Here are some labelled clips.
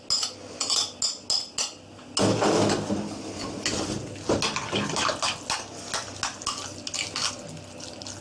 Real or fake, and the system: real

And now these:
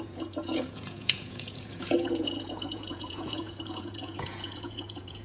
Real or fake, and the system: fake, vocoder, Vocos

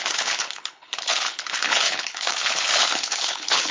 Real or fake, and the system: fake, codec, HILCodec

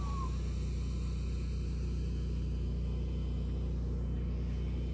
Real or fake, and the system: real